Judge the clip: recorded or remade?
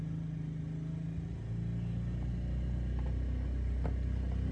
recorded